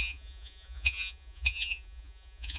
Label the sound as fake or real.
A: fake